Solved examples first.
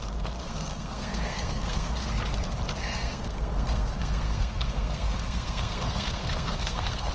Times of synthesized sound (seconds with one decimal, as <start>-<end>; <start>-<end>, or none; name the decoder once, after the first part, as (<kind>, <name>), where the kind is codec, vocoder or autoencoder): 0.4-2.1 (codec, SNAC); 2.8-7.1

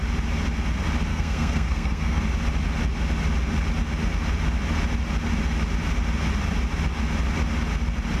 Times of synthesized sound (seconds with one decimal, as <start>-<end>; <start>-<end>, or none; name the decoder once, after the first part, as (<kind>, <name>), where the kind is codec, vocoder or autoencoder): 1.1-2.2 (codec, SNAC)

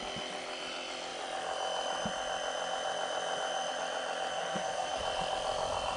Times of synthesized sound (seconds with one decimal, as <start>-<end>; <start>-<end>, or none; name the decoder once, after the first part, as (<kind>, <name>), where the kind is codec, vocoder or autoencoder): 4.3-5.0 (codec, SNAC)